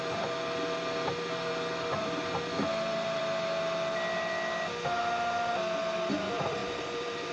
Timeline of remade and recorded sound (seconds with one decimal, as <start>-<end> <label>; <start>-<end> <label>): 0.0-2.7 recorded; 2.7-3.2 remade; 3.2-6.6 recorded; 6.6-7.3 remade